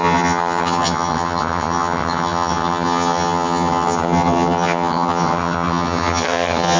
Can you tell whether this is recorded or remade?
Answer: remade